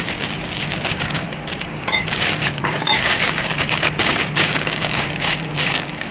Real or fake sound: fake